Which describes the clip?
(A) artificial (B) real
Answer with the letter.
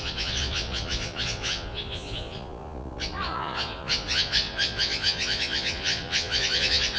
A